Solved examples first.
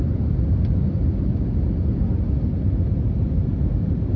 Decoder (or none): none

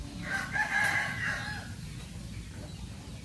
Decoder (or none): none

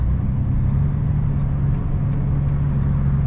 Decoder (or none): none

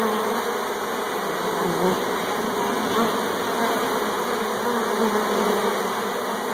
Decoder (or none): none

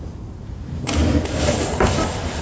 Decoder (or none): none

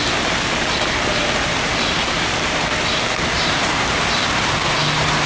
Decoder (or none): none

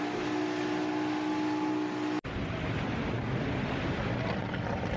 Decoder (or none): none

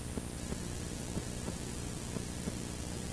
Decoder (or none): none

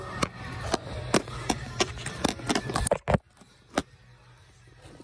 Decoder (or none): none